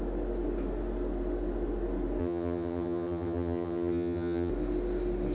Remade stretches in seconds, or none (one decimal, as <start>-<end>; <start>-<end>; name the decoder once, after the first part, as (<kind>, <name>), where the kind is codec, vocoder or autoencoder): 2.2-4.5 (vocoder, HiFi-GAN)